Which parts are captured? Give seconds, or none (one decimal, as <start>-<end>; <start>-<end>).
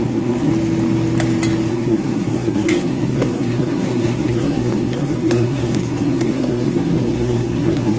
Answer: 0.5-1.7